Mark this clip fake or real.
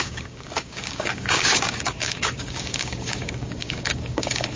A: fake